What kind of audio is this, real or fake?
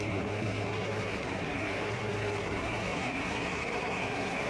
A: fake